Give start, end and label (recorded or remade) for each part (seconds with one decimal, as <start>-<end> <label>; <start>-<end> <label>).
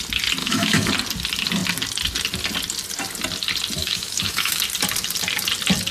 0.0-0.4 recorded; 0.4-0.9 remade; 0.9-3.8 recorded; 3.8-4.6 remade; 4.6-5.9 recorded